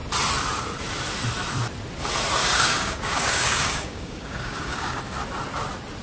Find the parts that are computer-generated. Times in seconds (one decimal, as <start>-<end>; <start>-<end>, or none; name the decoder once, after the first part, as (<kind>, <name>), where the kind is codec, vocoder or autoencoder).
2.4-5.0 (codec, DAC)